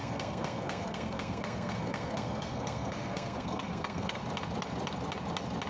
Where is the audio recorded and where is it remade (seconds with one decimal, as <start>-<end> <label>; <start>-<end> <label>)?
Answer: 0.0-4.2 remade; 4.2-5.7 recorded